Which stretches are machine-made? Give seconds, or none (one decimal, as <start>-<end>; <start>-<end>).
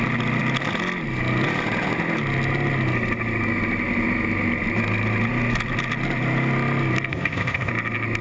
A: 7.1-7.7